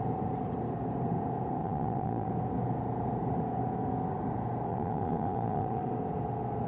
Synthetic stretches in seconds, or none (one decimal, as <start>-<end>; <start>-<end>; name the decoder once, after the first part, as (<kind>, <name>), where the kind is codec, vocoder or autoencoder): 1.6-2.3 (vocoder, Vocos); 4.7-5.9